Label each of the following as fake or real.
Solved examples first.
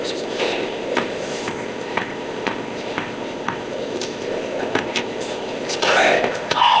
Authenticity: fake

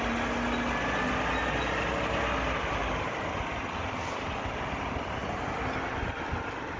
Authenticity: real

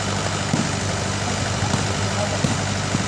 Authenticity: real